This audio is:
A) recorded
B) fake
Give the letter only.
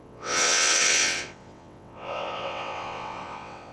B